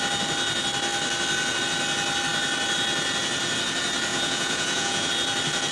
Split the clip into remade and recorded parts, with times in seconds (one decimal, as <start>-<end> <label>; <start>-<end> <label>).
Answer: 0.0-4.1 recorded; 4.1-5.1 remade; 5.1-5.7 recorded